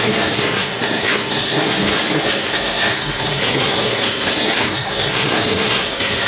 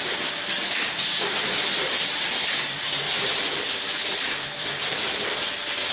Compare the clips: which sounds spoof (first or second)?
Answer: first